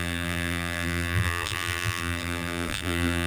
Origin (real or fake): fake